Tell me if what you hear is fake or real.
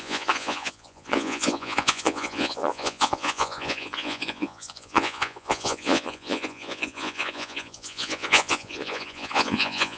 fake